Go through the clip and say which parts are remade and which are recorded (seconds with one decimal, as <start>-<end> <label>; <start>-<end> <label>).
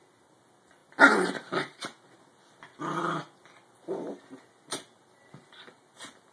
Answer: 0.0-6.3 recorded